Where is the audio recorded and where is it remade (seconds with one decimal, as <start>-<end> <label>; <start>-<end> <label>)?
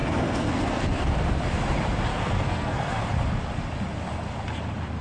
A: 0.0-1.1 remade; 1.1-2.1 recorded; 2.1-3.0 remade; 3.0-5.0 recorded